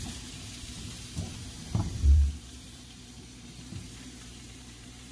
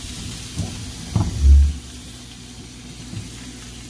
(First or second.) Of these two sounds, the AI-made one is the first